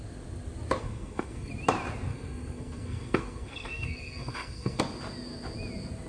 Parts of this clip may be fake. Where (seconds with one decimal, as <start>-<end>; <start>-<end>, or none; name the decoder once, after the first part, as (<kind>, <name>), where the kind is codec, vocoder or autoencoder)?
0.8-1.5 (codec, SNAC); 2.1-4.8